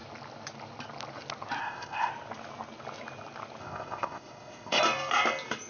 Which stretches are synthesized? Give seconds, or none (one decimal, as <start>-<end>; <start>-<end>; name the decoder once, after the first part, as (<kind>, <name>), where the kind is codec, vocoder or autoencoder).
1.6-2.1 (codec, ZipCodec); 3.6-4.8